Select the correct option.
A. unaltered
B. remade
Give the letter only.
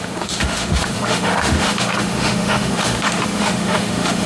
B